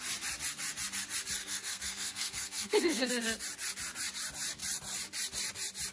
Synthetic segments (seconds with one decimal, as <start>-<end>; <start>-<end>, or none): 1.4-3.1